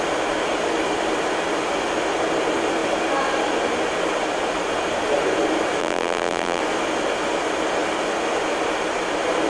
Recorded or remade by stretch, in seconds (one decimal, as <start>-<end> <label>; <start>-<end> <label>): 0.0-5.8 recorded; 5.8-6.6 remade; 6.6-9.5 recorded